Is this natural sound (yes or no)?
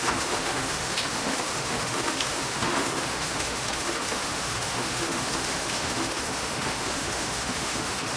no